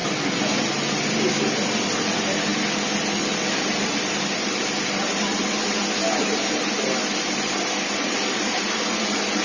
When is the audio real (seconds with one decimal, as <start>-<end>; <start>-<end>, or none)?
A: 0.0-9.4